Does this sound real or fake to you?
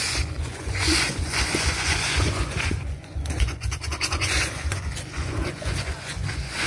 fake